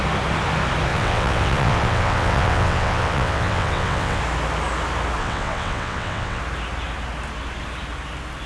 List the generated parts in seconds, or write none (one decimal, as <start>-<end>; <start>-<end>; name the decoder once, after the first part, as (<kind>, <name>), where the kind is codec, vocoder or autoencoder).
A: 0.9-4.2 (vocoder, WaveNeXt); 5.2-6.4